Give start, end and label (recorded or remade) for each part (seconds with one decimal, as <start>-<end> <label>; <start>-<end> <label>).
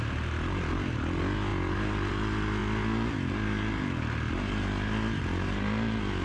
0.0-1.5 recorded; 1.5-2.1 remade; 2.1-6.2 recorded